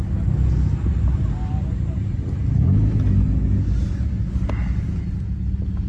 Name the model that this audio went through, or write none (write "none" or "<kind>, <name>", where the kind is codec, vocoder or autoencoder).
none